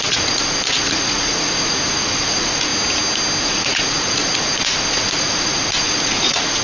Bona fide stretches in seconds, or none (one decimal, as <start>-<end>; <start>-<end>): 2.7-3.4